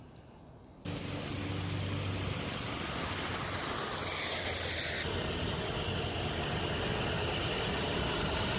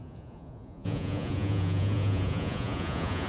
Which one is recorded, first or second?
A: first